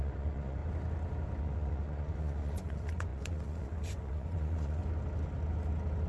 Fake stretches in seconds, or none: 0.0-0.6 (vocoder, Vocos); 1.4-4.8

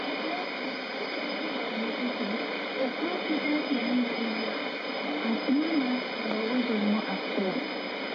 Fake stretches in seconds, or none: 0.0-6.8 (vocoder, BigVGAN v2); 7.3-8.1

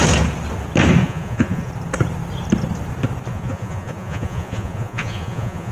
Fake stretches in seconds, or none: 1.0-1.7 (vocoder, Vocos); 3.3-5.7

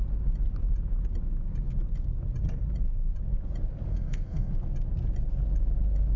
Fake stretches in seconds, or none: 3.9-4.5 (codec, SNAC)

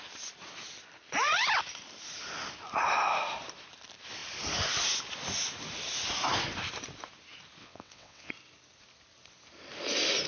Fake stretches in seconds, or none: 7.6-8.3 (vocoder, WaveNeXt)

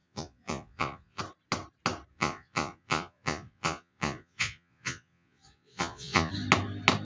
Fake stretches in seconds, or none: 0.0-1.2 (vocoder, Vocos); 2.1-6.3